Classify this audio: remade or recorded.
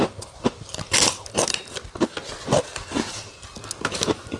recorded